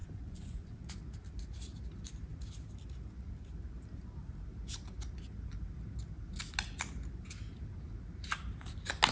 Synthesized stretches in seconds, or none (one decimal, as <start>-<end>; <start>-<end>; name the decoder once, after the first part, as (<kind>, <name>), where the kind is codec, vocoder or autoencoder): 0.0-0.9 (vocoder, Vocos)